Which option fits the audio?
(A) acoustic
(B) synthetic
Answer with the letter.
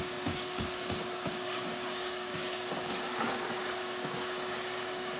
B